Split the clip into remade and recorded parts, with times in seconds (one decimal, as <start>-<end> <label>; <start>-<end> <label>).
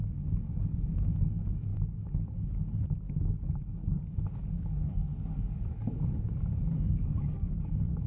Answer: 0.0-3.8 remade; 3.8-4.6 recorded; 4.6-8.1 remade